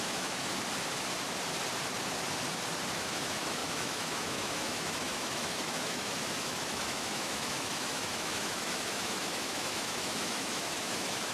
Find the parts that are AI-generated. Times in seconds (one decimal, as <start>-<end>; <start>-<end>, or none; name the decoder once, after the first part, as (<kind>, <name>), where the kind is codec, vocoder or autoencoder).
0.0-0.5 (autoencoder, DAC-VAE); 2.9-11.3